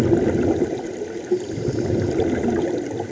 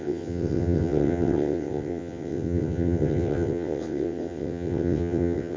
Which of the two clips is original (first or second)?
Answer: first